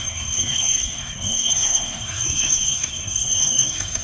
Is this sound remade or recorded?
remade